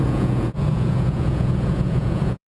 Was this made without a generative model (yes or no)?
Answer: no